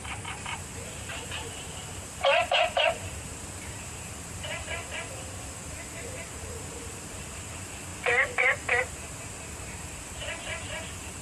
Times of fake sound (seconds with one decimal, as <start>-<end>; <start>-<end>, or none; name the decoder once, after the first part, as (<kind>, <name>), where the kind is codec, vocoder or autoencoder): 0.0-4.8 (vocoder, BigVGAN v2); 6.0-11.2